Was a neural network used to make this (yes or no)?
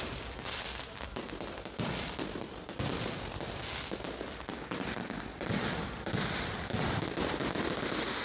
no